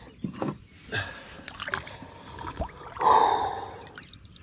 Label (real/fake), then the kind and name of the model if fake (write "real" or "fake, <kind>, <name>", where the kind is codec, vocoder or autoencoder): real